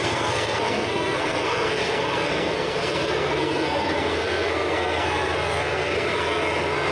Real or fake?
fake